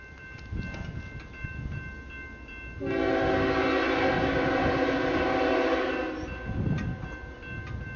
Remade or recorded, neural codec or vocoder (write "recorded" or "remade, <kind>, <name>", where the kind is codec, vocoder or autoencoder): recorded